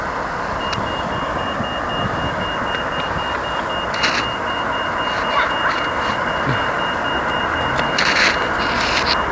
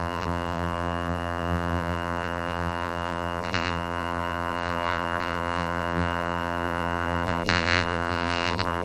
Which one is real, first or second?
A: first